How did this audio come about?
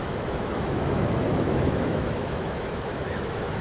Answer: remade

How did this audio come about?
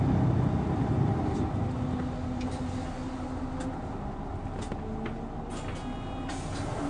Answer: recorded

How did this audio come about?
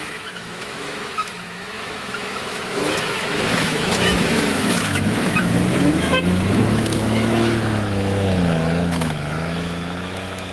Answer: remade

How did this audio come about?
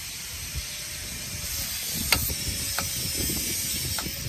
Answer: recorded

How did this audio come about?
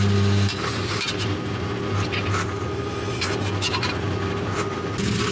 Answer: recorded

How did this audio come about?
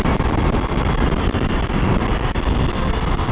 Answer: recorded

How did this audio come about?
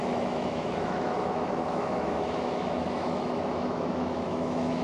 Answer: remade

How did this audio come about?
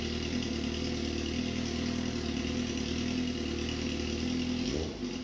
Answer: recorded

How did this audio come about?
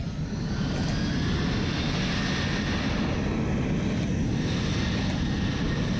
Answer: recorded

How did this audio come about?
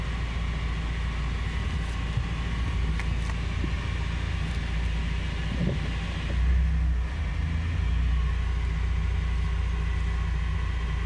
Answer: recorded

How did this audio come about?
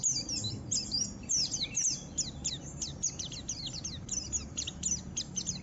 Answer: recorded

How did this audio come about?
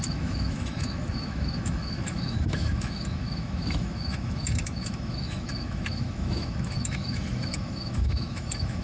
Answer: remade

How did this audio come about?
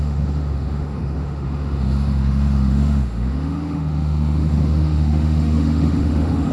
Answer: remade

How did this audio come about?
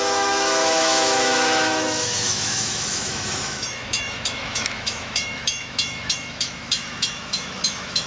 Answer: remade